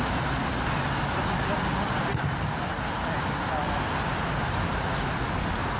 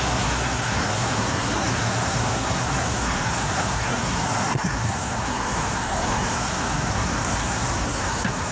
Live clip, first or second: first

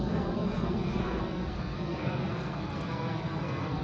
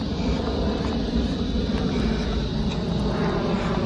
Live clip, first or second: second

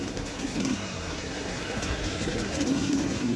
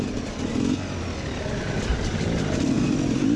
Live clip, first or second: second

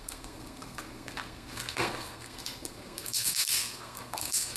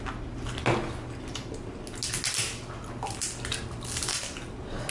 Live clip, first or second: second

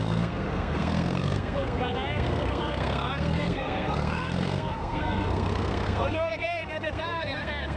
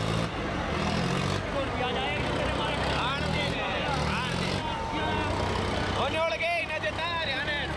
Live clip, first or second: second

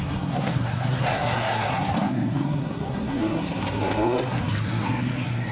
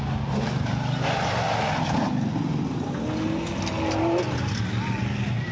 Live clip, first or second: second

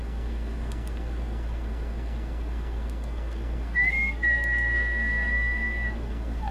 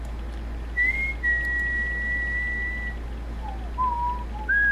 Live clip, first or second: second